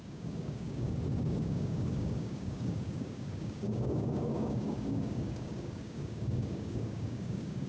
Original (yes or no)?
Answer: no